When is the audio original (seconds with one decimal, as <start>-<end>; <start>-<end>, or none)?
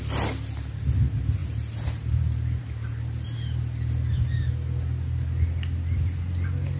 0.0-1.4; 2.6-6.8